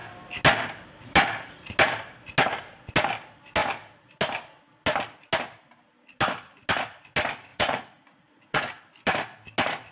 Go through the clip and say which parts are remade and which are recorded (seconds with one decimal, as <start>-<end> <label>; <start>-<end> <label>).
0.0-7.5 recorded; 7.5-8.6 remade; 8.6-9.9 recorded